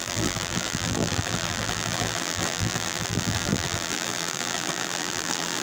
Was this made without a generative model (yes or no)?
no